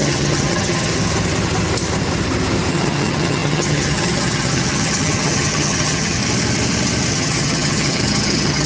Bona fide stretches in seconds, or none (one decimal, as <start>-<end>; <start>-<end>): 0.9-2.7; 6.2-7.1